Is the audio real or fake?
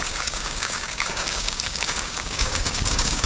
fake